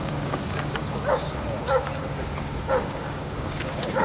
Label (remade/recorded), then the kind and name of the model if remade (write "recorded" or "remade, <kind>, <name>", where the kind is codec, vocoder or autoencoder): remade, codec, DAC